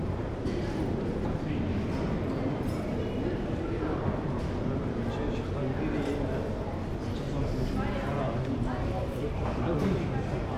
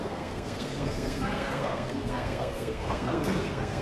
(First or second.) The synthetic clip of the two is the second